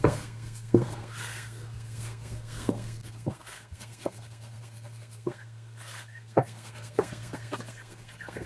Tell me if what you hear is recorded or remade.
remade